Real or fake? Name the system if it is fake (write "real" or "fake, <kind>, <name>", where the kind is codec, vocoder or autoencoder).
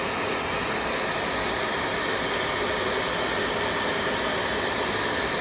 real